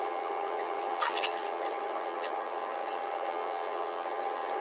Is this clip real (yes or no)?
no